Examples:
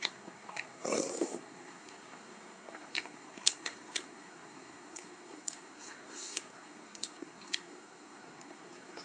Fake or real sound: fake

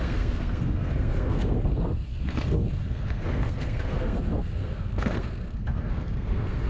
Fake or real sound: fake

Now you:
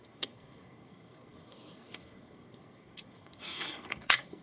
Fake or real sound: fake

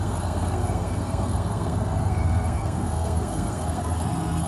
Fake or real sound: fake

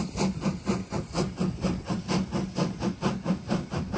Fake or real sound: real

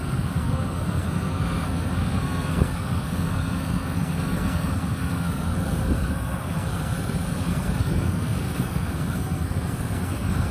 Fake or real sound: fake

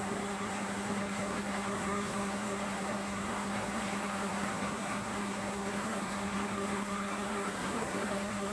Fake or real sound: fake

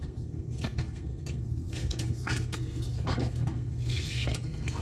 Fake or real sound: fake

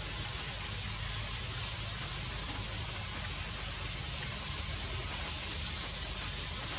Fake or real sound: real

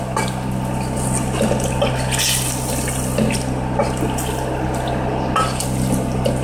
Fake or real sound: real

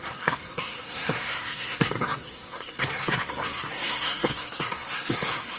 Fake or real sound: fake